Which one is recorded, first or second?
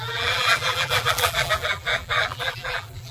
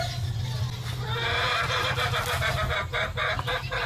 second